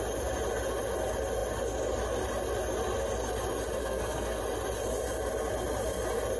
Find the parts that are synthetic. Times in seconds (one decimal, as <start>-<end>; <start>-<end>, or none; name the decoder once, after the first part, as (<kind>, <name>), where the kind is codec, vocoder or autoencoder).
3.8-4.4 (codec, SNAC)